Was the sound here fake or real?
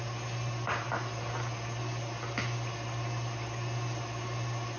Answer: real